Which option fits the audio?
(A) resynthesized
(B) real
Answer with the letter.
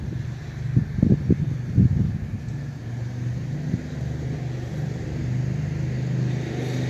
B